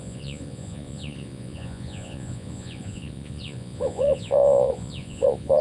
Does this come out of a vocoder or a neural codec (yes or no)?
yes